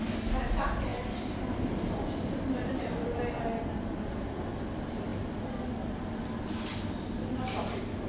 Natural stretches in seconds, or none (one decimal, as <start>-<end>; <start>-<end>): none